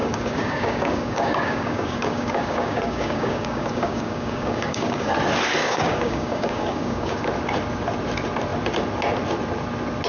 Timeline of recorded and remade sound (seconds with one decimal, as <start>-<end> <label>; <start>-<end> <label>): 0.0-5.1 remade; 5.1-5.6 recorded; 5.6-7.3 remade; 7.3-10.1 recorded